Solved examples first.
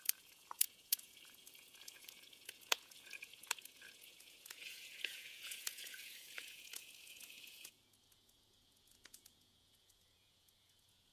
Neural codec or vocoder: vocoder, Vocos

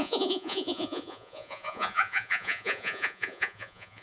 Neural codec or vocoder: vocoder, Vocos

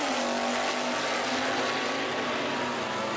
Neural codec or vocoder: none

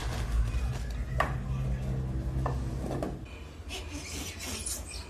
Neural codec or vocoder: none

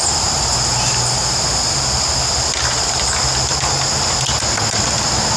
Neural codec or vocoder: none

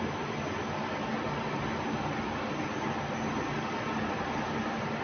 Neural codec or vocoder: none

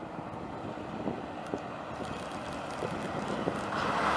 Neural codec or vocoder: none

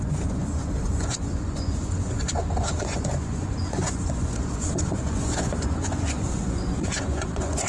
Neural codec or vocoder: vocoder, Vocos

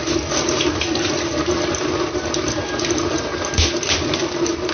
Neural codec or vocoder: none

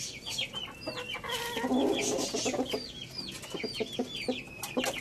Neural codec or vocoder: none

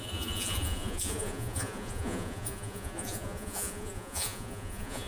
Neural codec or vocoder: vocoder, Vocos